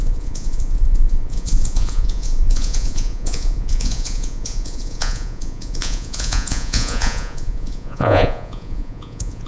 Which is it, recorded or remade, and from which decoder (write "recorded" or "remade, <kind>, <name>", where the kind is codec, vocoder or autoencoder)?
remade, vocoder, Vocos